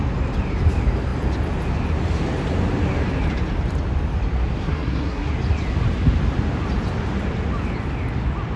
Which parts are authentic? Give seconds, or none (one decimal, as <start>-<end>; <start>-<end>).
0.0-4.6; 5.3-8.6